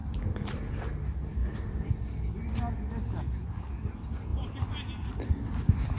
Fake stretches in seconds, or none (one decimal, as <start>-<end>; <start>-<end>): 0.0-0.9; 1.4-1.9; 4.3-5.3